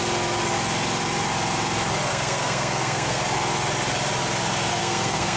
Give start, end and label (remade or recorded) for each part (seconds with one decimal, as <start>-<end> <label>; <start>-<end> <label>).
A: 0.0-2.1 recorded; 2.1-3.2 remade; 3.2-4.8 recorded; 4.8-5.4 remade